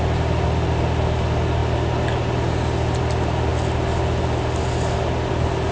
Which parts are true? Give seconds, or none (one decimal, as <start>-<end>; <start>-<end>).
0.0-5.7